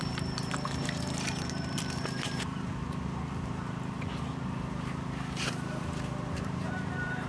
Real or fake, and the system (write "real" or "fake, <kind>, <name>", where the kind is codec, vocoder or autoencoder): fake, vocoder, BigVGAN v2